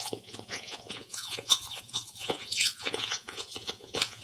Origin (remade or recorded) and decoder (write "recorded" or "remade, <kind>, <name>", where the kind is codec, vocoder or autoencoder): remade, vocoder, Vocos